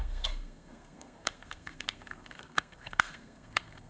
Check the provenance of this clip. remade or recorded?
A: remade